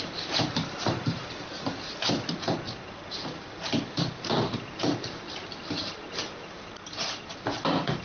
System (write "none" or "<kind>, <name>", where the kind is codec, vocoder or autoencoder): vocoder, BigVGAN v2